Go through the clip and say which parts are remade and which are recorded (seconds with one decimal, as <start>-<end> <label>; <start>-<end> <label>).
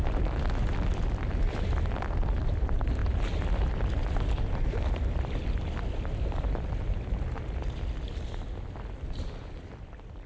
0.0-3.0 remade; 3.0-4.5 recorded; 4.5-10.3 remade